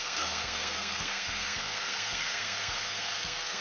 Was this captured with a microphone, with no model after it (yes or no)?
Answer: no